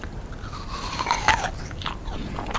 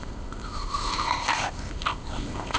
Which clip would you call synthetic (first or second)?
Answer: second